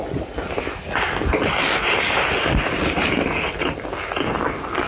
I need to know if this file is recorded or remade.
recorded